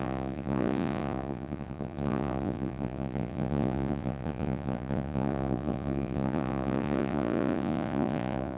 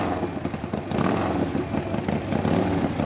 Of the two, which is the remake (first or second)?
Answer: first